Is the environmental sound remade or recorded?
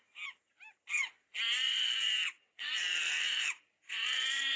remade